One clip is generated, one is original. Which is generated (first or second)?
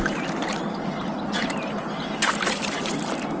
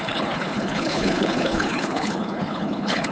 second